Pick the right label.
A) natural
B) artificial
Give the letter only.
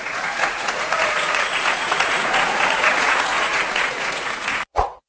B